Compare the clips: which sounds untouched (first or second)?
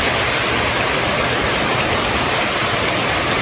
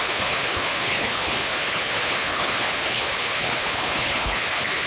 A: first